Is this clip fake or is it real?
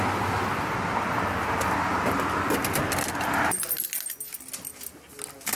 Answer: real